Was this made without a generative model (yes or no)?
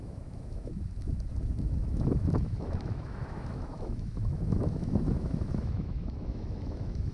no